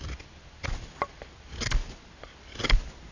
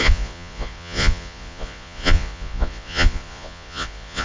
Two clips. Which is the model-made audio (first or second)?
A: second